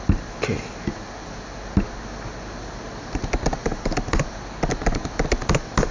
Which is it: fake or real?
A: real